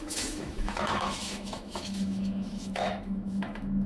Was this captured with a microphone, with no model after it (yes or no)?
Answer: no